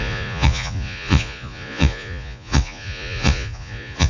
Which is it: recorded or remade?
remade